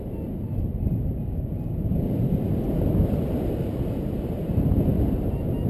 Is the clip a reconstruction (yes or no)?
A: no